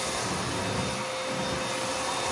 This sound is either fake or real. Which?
real